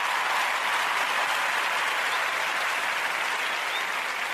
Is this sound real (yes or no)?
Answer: yes